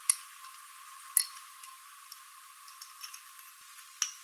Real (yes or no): yes